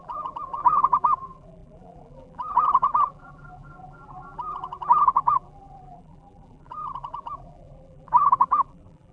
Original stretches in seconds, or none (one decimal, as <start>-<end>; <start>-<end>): none